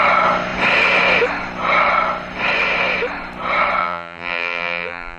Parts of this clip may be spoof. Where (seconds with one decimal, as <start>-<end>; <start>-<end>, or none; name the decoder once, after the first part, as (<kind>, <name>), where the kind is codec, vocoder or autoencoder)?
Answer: 3.8-5.2 (vocoder, BigVGAN v2)